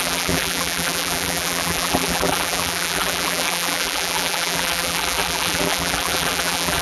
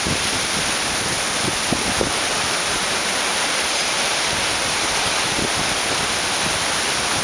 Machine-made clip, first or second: first